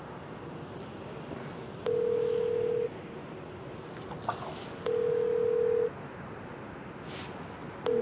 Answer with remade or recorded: recorded